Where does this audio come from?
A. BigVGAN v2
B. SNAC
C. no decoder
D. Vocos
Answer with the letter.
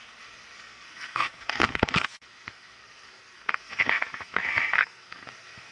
B